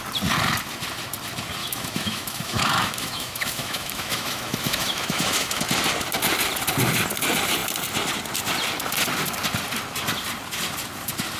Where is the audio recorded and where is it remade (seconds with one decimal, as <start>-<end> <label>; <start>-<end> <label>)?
0.0-1.6 recorded; 1.6-5.6 remade; 5.6-11.4 recorded

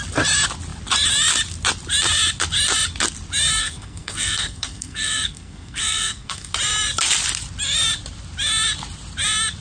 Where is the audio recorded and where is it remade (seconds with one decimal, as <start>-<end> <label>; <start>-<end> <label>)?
0.0-3.6 recorded; 3.6-6.5 remade; 6.5-9.6 recorded

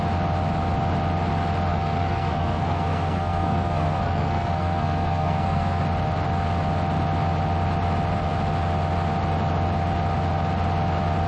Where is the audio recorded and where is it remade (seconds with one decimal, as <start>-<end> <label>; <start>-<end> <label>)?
0.0-1.7 recorded; 1.7-5.8 remade; 5.8-11.3 recorded

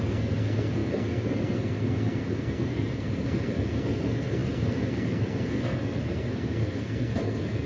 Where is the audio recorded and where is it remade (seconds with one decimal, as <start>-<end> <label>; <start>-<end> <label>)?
0.0-7.7 remade

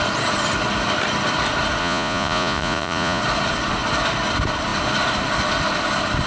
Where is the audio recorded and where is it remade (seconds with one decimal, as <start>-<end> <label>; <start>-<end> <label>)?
0.0-1.8 recorded; 1.8-3.2 remade; 3.2-6.3 recorded